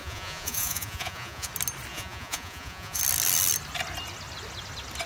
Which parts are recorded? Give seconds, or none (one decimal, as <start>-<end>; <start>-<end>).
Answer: 1.5-1.9; 3.0-5.1

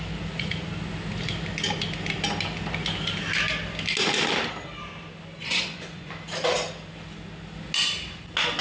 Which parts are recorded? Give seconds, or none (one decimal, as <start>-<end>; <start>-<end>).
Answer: 0.0-5.4; 6.1-8.6

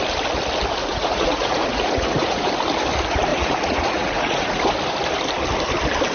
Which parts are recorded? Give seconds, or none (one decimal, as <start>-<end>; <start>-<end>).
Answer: 0.0-0.8; 2.4-3.3; 4.6-6.1

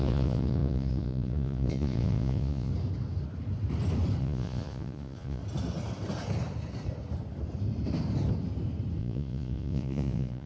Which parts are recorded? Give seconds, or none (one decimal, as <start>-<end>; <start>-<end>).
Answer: 2.7-4.2; 5.4-9.0

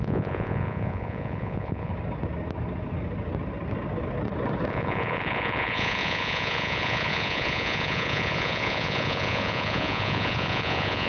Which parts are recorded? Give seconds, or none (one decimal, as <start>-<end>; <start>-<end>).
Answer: 1.9-4.7

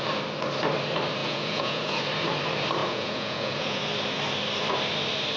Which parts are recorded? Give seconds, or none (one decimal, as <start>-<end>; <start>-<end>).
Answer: 0.0-1.2; 2.0-2.8; 3.8-5.4

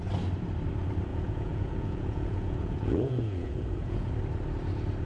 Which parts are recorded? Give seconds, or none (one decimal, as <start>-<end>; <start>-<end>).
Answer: 0.0-1.1; 4.1-5.0